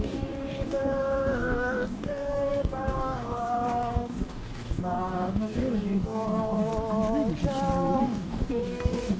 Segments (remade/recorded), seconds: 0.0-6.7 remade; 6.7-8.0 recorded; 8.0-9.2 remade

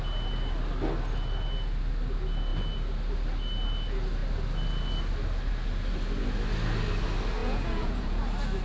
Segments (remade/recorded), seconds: 0.0-7.4 recorded; 7.4-8.2 remade; 8.2-8.6 recorded